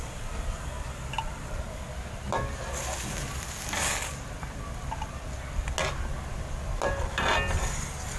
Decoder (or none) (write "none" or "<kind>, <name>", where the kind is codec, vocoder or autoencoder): none